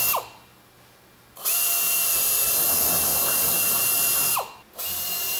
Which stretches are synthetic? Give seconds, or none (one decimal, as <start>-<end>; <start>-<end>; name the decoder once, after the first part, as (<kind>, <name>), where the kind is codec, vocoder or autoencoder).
3.1-3.8 (vocoder, BigVGAN v2)